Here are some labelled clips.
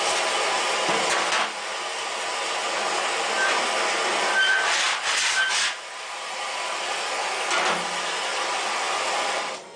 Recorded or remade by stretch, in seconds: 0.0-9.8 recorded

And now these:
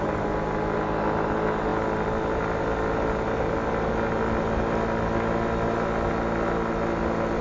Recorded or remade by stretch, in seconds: 0.0-7.4 recorded

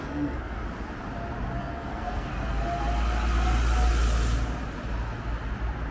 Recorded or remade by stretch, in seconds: 0.0-0.6 remade; 0.6-1.6 recorded; 1.6-2.3 remade; 2.3-5.9 recorded

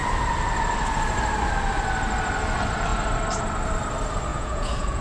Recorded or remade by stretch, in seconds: 0.0-4.3 recorded; 4.3-5.0 remade